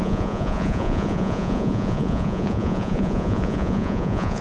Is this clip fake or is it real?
fake